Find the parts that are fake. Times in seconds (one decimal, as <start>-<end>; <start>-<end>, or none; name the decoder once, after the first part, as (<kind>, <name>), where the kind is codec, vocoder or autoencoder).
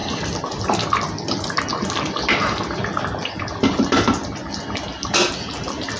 none